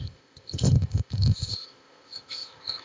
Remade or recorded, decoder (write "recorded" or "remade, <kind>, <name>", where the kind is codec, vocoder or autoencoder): remade, codec, ZipCodec